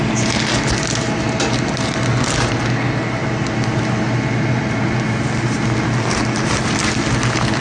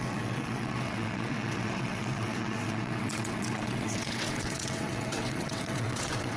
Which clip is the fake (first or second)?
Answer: second